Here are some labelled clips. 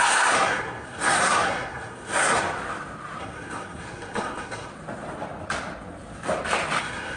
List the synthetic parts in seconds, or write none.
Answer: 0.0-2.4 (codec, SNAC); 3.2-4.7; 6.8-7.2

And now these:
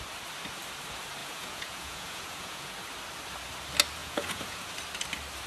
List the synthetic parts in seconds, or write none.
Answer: 1.2-2.7 (vocoder, Vocos); 4.0-4.6

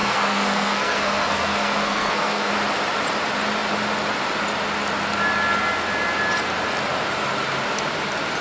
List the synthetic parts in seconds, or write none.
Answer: 0.0-2.5 (codec, SNAC)

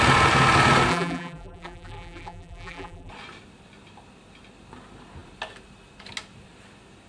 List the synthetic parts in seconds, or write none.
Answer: 0.9-3.1 (vocoder, BigVGAN v2)